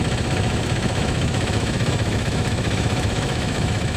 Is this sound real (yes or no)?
no